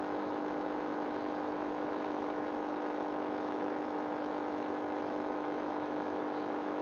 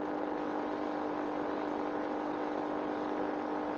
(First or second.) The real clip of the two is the second